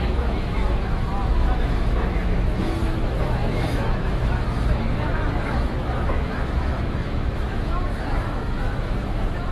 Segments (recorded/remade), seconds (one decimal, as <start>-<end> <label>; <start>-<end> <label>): 0.0-9.5 remade